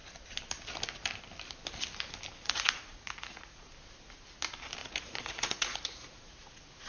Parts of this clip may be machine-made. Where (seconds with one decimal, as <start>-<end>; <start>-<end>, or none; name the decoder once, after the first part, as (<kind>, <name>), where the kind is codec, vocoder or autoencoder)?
2.4-3.7 (vocoder, Vocos); 4.8-6.9